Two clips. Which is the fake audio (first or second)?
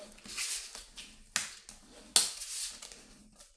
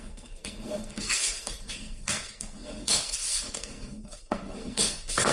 second